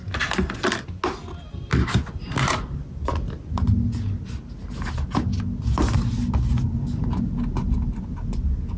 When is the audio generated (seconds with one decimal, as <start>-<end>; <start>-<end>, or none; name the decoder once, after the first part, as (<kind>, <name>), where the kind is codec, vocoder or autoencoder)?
none